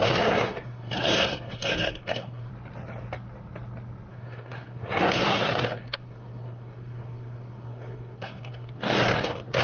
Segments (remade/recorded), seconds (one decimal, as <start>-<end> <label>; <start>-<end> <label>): 0.0-2.5 remade; 2.5-4.1 recorded; 4.1-9.6 remade